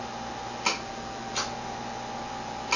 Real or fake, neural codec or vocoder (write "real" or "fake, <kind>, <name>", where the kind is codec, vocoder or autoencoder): real